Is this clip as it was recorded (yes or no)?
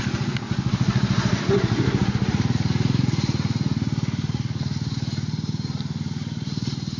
yes